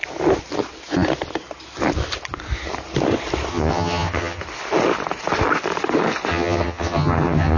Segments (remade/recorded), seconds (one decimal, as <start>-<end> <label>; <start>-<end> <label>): 0.0-3.5 recorded; 3.5-4.4 remade; 4.4-6.3 recorded; 6.3-7.6 remade